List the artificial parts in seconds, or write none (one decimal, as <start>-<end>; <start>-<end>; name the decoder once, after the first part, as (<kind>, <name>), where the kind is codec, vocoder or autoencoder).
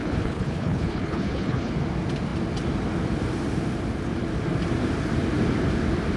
0.0-1.7 (codec, HILCodec)